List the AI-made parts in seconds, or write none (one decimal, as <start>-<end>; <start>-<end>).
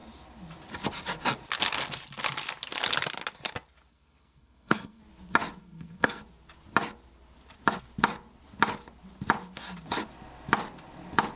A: 3.9-5.0; 5.6-6.2